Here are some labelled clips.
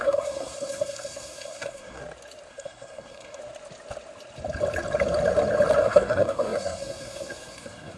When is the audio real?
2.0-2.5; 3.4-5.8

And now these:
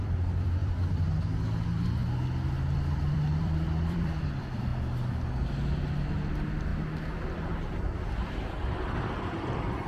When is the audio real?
2.0-2.5; 4.7-6.3; 6.7-9.0

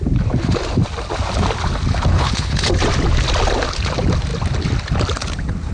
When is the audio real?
0.0-2.1; 2.7-5.7

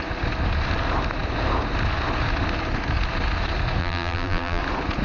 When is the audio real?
0.0-3.8; 4.6-5.0